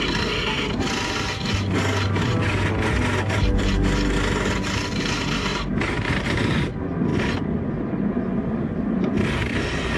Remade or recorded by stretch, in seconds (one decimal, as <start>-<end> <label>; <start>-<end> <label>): 0.0-10.0 recorded

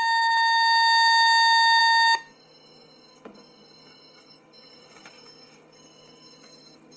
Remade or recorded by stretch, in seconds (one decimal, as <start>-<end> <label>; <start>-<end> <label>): 0.0-7.0 remade